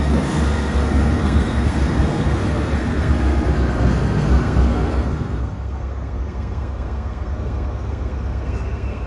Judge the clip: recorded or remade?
remade